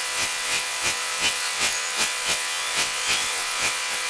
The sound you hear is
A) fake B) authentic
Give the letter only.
A